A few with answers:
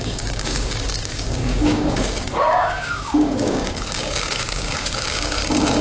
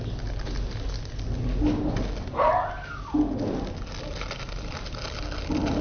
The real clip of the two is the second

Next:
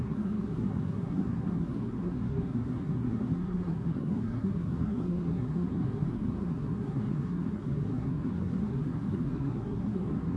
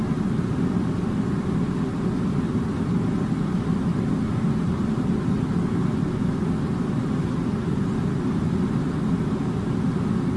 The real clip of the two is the second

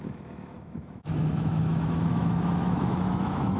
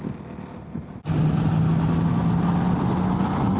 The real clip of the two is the second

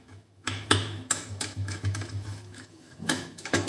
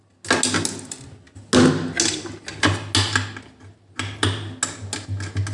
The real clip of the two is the second